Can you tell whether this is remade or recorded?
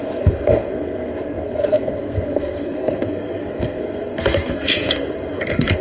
remade